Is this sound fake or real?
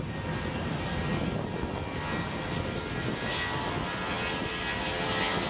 real